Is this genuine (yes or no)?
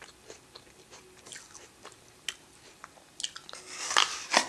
yes